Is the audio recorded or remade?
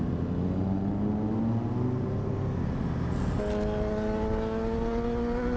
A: recorded